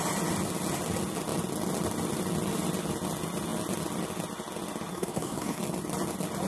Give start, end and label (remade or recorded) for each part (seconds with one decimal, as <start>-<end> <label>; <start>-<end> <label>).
0.0-4.9 recorded; 4.9-5.6 remade; 5.6-6.5 recorded